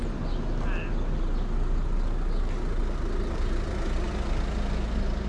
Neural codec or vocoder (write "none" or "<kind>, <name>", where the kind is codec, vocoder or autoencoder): none